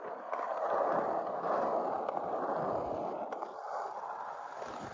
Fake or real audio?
real